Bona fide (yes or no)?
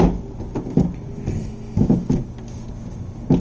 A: yes